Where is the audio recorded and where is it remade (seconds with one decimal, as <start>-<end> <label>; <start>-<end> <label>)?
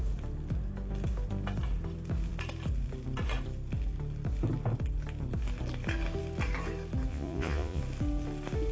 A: 0.0-7.1 recorded; 7.1-7.8 remade; 7.8-8.7 recorded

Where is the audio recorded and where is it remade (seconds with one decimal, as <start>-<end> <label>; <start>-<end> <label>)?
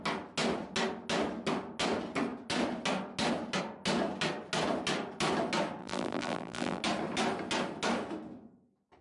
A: 0.0-5.8 recorded; 5.8-6.8 remade; 6.8-9.0 recorded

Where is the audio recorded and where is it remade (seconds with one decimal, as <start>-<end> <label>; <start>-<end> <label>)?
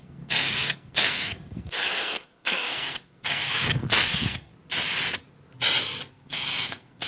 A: 0.0-4.5 remade; 4.5-6.1 recorded; 6.1-7.1 remade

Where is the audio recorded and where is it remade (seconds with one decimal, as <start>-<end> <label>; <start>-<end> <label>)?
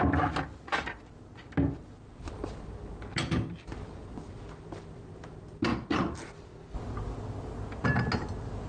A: 0.0-8.7 recorded